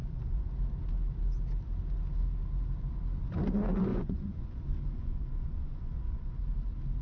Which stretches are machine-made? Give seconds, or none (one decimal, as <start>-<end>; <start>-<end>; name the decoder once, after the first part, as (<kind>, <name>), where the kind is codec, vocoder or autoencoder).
0.0-0.5 (vocoder, Vocos); 3.9-6.3